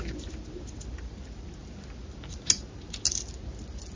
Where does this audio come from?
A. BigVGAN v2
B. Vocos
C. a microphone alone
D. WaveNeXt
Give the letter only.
C